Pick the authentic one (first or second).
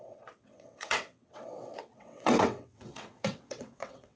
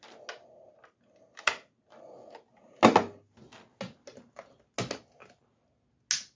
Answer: second